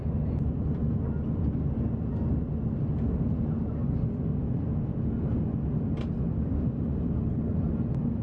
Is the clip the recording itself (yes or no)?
yes